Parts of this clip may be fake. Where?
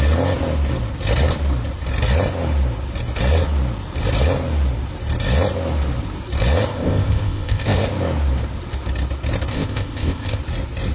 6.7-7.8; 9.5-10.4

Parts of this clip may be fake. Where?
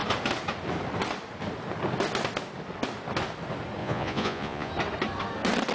3.8-4.7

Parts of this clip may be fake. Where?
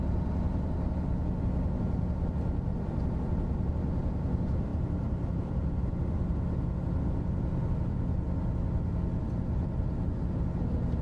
2.7-3.2; 4.7-5.7